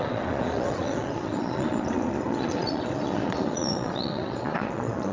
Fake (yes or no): yes